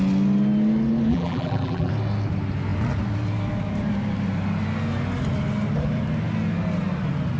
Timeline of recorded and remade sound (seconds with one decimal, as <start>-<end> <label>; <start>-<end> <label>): 0.0-1.1 recorded; 1.1-1.9 remade; 1.9-7.4 recorded